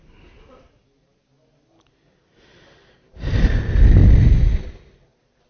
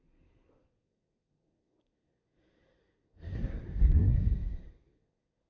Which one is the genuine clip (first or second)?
first